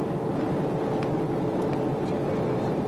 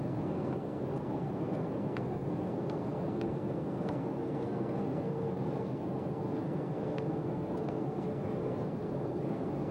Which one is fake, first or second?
second